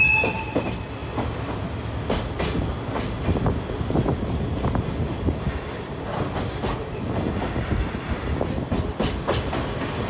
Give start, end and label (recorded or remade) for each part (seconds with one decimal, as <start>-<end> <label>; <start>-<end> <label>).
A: 0.0-10.1 recorded